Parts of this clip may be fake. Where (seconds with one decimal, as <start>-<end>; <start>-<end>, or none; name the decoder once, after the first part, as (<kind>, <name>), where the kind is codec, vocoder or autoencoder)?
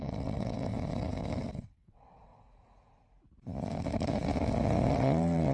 0.0-0.7 (vocoder, WaveNeXt); 1.5-2.3; 4.9-5.5